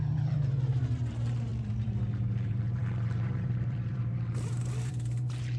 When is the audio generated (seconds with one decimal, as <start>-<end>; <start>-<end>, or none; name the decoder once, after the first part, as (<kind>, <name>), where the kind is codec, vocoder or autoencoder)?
0.0-5.6 (vocoder, BigVGAN v2)

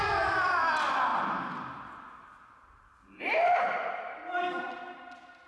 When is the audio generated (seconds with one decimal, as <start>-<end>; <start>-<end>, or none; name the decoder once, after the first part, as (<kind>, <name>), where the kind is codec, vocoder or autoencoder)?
0.0-1.1 (vocoder, BigVGAN v2); 3.2-5.5

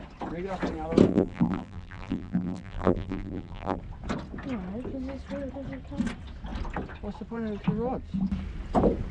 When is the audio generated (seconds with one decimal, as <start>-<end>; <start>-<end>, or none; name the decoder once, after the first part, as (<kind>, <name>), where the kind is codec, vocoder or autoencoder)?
1.1-3.8 (vocoder, BigVGAN v2)

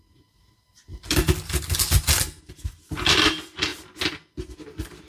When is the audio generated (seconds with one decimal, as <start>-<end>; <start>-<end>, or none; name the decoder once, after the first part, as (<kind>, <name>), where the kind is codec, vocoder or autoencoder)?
0.0-0.9 (vocoder, BigVGAN v2); 2.5-3.7

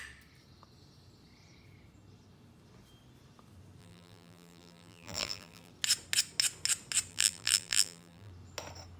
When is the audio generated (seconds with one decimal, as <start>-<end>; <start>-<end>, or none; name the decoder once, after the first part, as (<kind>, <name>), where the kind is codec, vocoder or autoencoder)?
3.8-5.7 (vocoder, BigVGAN v2); 7.1-8.3

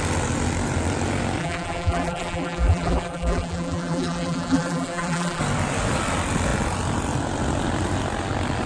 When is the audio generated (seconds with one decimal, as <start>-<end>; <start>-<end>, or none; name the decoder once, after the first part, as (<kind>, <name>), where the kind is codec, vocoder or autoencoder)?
1.4-5.4 (vocoder, BigVGAN v2)

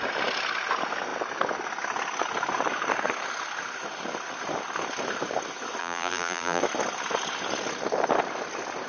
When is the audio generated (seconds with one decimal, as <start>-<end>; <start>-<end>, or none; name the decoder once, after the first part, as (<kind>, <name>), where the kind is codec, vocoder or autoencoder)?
5.8-6.6 (vocoder, BigVGAN v2)